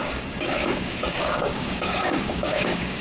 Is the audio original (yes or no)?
no